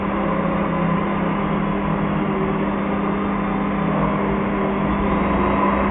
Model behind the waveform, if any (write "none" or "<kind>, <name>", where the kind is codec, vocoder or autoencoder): none